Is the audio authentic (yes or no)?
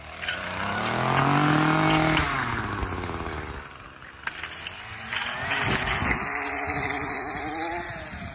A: yes